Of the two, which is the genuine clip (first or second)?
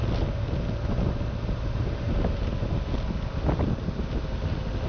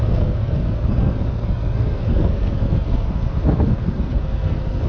first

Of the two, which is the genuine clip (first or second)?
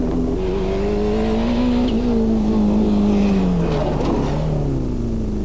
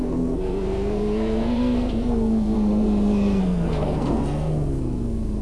first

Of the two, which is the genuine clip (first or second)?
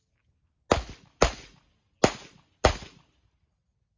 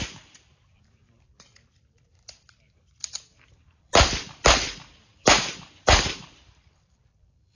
first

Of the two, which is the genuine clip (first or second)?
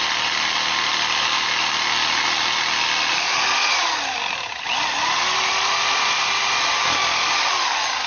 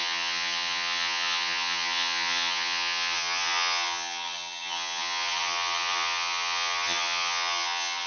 first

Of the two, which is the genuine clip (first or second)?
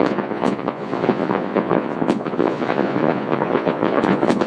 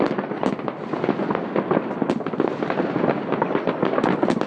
second